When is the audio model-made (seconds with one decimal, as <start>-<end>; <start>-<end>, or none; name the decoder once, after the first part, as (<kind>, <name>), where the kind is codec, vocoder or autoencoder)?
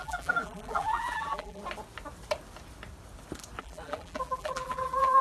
0.0-1.6 (vocoder, BigVGAN v2); 3.6-5.2